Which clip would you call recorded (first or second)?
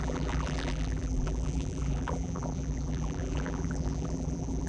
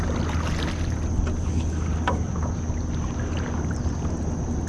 second